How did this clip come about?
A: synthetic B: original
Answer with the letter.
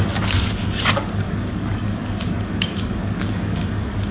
A